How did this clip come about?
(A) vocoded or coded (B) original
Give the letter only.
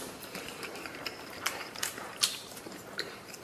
A